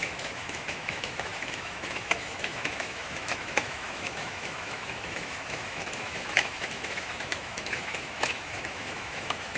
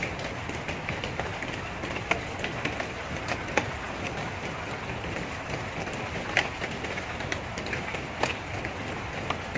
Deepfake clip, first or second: first